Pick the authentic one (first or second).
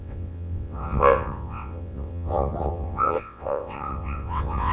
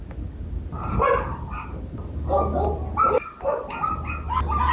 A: second